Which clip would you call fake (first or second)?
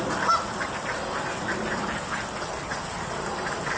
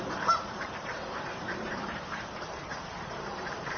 second